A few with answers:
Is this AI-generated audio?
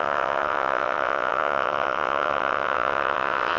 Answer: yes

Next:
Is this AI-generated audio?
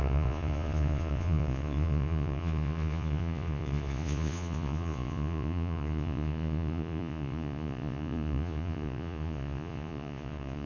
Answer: yes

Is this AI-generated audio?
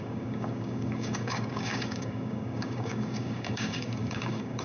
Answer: yes